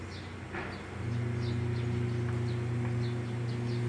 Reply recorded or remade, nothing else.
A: recorded